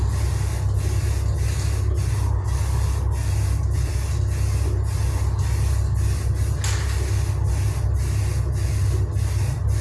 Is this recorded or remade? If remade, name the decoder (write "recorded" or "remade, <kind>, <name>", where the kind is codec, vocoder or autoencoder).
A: recorded